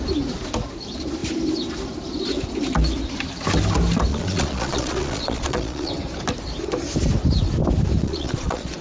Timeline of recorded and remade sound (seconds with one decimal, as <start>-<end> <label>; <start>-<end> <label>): 0.0-4.1 recorded; 4.1-5.9 remade; 5.9-8.0 recorded; 8.0-8.8 remade